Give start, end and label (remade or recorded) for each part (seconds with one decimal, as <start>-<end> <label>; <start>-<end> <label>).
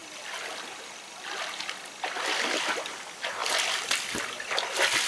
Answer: 0.0-5.1 recorded